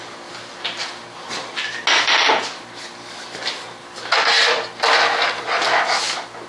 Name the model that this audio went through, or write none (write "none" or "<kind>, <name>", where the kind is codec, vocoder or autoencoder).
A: none